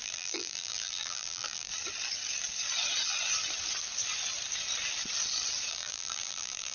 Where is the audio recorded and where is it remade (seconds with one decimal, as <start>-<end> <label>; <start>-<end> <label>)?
0.0-1.7 remade; 1.7-5.7 recorded; 5.7-6.7 remade